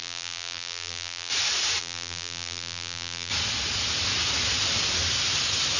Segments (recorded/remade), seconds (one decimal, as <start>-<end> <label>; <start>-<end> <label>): 0.0-1.3 remade; 1.3-1.8 recorded; 1.8-3.3 remade; 3.3-5.8 recorded